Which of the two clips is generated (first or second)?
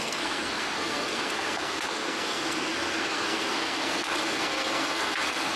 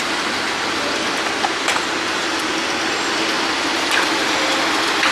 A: first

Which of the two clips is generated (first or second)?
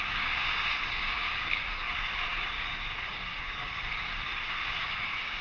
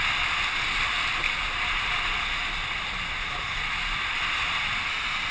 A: first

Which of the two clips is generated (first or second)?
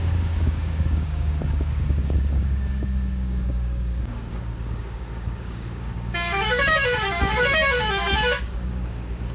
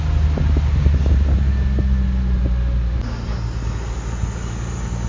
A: first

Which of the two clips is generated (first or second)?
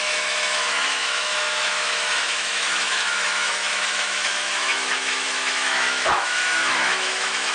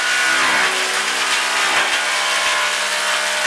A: first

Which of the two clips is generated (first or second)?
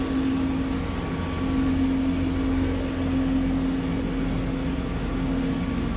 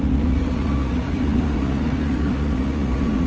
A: second